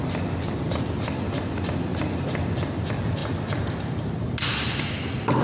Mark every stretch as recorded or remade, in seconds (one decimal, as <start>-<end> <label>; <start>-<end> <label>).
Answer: 0.0-5.4 recorded